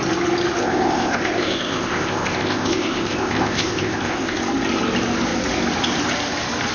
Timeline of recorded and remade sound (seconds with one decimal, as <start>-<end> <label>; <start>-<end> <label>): 0.0-0.6 recorded; 0.6-4.4 remade; 4.4-6.7 recorded